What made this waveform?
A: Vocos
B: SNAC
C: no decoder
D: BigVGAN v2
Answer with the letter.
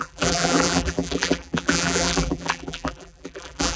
D